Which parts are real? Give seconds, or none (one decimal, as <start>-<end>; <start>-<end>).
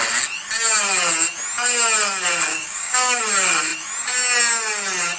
0.0-2.5; 3.2-5.2